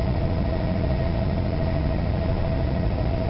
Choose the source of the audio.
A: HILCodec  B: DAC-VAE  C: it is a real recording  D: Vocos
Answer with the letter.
D